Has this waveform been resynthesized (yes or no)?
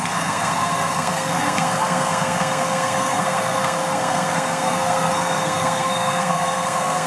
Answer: yes